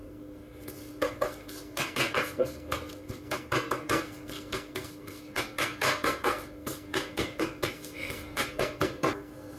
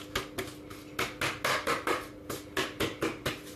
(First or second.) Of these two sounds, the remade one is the first